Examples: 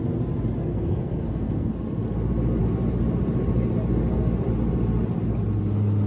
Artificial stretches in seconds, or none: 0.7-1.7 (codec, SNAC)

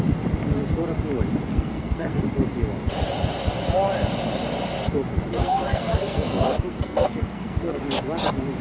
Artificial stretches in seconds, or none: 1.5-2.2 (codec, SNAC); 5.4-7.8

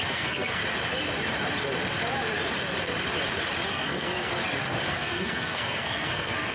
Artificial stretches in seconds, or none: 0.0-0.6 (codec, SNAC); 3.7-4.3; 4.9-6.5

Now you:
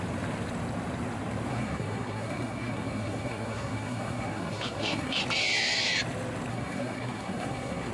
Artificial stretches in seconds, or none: 1.5-5.2 (codec, SNAC); 6.5-7.9

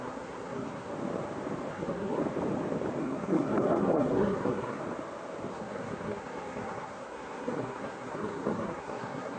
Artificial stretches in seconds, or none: 0.0-0.9 (codec, SNAC); 1.7-2.2; 3.0-4.8; 5.5-9.4

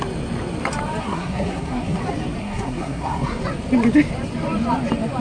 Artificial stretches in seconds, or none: 1.0-2.0 (codec, SNAC); 2.4-3.4